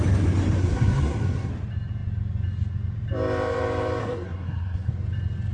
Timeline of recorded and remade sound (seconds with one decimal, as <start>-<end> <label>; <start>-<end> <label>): 0.0-0.6 recorded; 0.6-1.5 remade; 1.5-4.0 recorded; 4.0-4.9 remade; 4.9-5.5 recorded